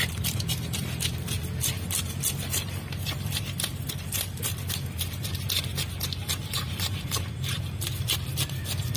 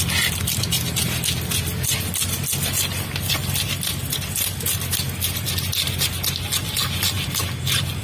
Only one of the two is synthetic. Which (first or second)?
first